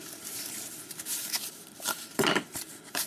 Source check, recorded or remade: remade